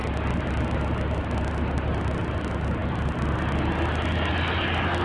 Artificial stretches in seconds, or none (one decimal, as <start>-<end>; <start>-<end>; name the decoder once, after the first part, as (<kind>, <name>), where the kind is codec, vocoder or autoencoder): none